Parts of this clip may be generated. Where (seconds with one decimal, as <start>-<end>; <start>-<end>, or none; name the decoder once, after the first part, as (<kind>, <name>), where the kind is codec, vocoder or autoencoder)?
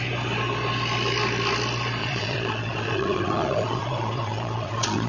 2.0-5.1 (vocoder, Vocos)